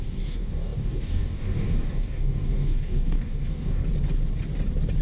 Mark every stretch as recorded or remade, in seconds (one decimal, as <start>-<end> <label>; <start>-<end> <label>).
0.0-3.8 remade; 3.8-5.0 recorded